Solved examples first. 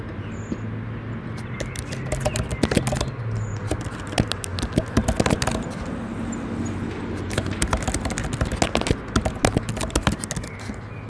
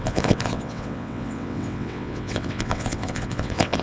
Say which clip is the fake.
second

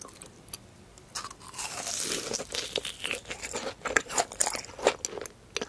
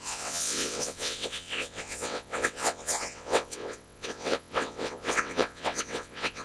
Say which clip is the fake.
second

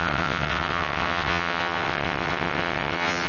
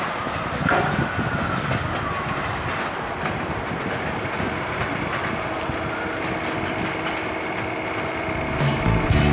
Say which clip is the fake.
first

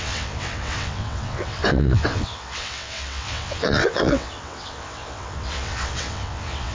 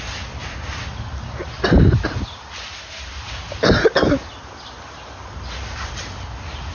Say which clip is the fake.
first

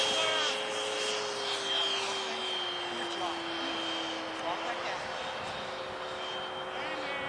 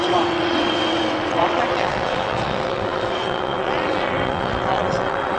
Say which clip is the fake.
second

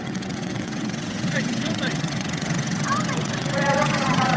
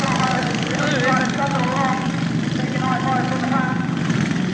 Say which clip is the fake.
first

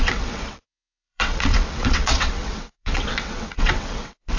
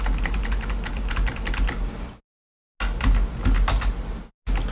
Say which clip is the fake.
first